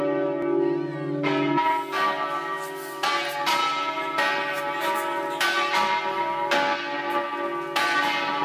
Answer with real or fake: real